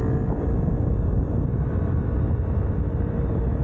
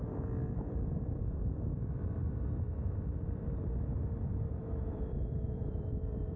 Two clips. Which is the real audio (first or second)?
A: first